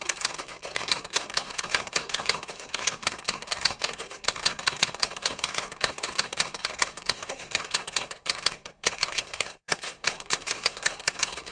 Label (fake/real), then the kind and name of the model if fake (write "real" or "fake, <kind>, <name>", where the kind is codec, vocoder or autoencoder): fake, codec, SNAC